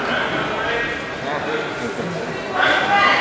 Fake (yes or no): no